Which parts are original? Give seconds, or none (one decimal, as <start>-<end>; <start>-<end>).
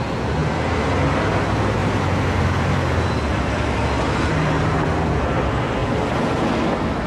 0.0-1.8; 4.8-7.1